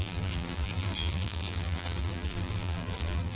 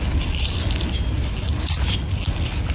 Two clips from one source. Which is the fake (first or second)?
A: first